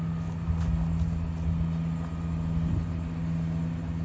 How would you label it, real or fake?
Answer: real